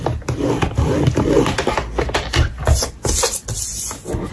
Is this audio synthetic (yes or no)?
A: no